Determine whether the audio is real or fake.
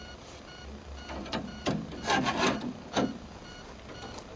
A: fake